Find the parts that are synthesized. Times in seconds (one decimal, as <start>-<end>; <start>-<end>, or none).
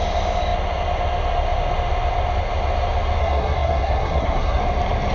3.2-4.6